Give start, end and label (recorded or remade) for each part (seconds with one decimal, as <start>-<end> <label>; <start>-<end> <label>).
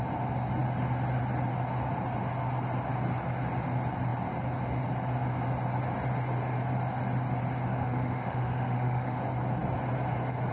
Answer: 0.0-7.7 recorded; 7.7-9.2 remade; 9.2-10.5 recorded